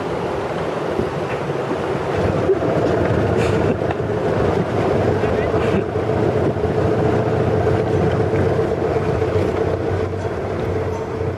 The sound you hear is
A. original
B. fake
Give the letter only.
A